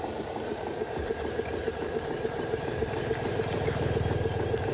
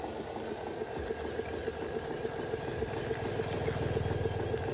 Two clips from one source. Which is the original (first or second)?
second